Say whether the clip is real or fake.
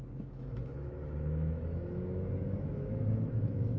fake